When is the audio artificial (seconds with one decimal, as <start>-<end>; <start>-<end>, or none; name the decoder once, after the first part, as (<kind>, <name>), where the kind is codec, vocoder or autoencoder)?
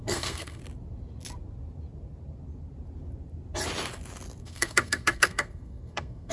0.0-0.6 (codec, SNAC); 4.4-6.3